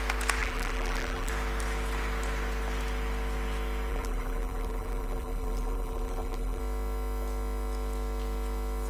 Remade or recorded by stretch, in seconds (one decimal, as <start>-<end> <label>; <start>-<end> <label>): 0.0-0.4 recorded; 0.4-1.3 remade; 1.3-3.9 recorded; 3.9-6.6 remade; 6.6-8.9 recorded